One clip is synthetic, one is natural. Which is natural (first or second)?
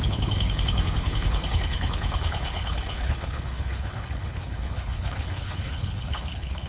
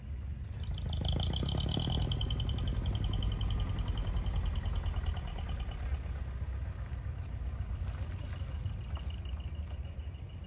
second